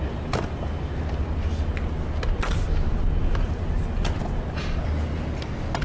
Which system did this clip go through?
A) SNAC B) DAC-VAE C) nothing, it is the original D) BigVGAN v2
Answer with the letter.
C